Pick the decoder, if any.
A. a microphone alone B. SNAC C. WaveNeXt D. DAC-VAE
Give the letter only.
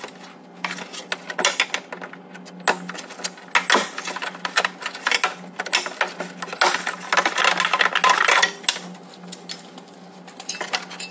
A